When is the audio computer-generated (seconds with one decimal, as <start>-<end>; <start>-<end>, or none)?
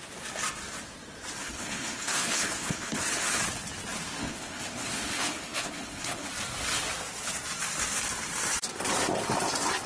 1.4-3.4; 4.2-6.3